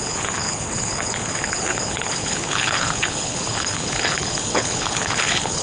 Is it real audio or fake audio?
fake